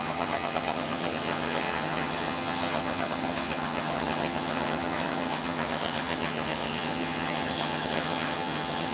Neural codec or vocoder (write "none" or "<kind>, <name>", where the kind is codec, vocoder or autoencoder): vocoder, HiFi-GAN